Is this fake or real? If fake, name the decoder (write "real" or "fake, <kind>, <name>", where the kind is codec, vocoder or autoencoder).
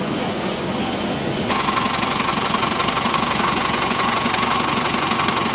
fake, vocoder, Vocos